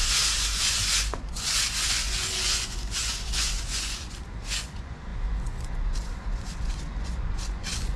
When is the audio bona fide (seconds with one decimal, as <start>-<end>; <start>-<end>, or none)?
none